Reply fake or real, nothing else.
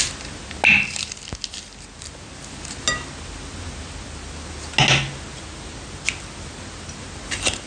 real